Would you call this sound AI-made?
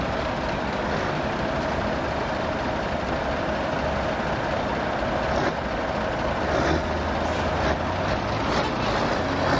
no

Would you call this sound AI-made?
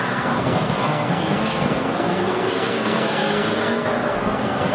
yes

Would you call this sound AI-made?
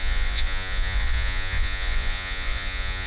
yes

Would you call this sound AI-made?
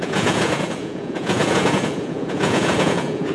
yes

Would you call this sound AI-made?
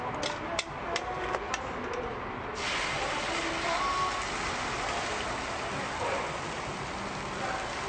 no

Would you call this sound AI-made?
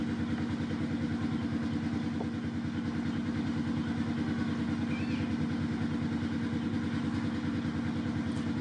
no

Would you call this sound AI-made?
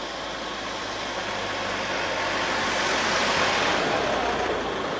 no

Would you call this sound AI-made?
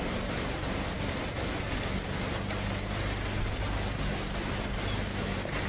no